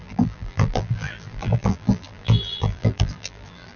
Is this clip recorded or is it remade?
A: remade